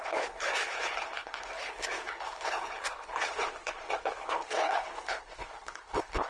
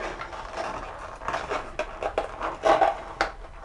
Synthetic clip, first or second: first